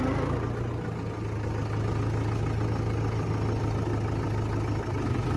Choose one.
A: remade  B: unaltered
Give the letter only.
B